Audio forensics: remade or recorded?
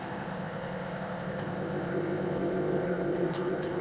remade